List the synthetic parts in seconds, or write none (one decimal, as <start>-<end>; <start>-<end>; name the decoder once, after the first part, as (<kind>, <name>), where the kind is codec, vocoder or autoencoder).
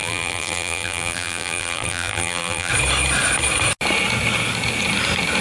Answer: 0.0-2.7 (vocoder, BigVGAN v2)